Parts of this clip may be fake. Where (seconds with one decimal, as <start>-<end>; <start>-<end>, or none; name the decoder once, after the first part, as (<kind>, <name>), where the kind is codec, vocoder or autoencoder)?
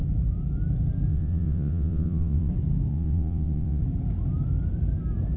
1.1-2.5 (vocoder, WaveNeXt); 2.9-3.8